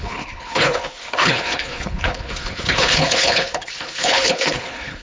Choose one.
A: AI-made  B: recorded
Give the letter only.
A